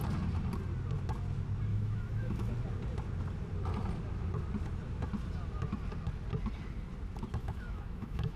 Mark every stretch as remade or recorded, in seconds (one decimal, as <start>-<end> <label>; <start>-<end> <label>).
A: 0.0-1.7 recorded; 1.7-2.5 remade; 2.5-7.4 recorded; 7.4-8.4 remade

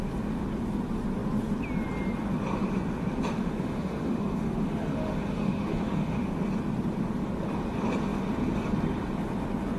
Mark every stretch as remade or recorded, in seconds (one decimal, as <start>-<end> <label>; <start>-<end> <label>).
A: 0.0-3.4 recorded; 3.4-6.3 remade; 6.3-9.8 recorded

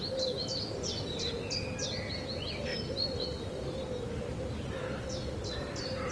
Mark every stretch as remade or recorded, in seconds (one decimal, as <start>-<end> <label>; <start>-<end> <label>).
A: 0.0-6.1 recorded

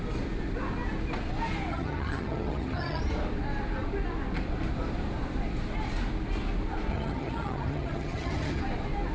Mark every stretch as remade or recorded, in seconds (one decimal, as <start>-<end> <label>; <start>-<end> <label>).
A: 0.0-1.7 recorded; 1.7-3.0 remade; 3.0-6.9 recorded; 6.9-8.6 remade; 8.6-9.1 recorded

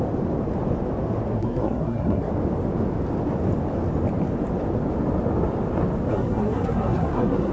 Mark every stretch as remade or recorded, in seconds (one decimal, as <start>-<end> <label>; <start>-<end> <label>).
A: 0.0-1.3 recorded; 1.3-2.3 remade; 2.3-6.1 recorded; 6.1-7.5 remade